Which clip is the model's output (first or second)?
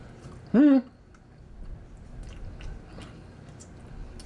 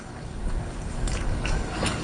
second